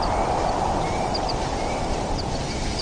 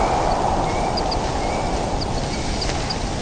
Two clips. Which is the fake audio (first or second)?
first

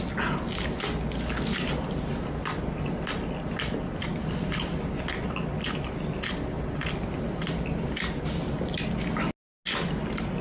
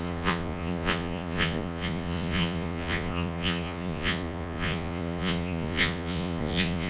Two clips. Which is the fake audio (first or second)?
second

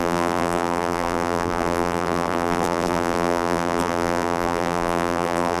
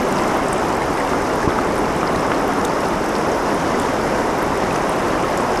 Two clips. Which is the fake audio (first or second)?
first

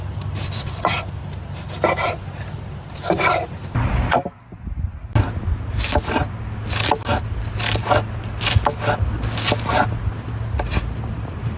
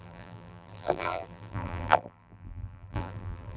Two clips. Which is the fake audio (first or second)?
second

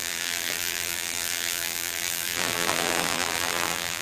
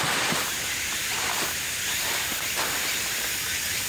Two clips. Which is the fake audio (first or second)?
first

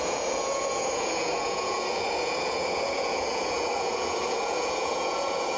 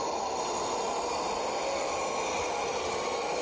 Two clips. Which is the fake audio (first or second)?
first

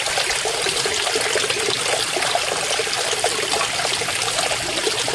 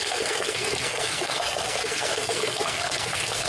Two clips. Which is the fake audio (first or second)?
second